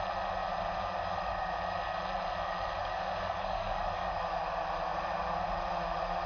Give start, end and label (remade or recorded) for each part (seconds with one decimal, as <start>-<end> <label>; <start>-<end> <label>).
0.0-2.8 recorded; 2.8-4.2 remade; 4.2-6.3 recorded